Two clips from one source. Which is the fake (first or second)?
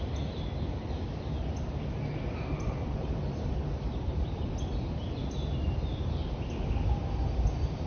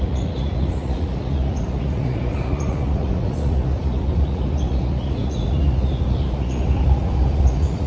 second